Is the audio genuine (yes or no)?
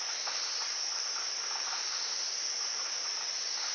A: yes